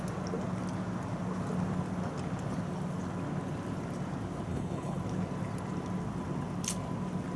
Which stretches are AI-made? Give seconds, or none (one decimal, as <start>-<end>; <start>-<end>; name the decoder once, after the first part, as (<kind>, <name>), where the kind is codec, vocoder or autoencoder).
4.5-5.0 (codec, HILCodec)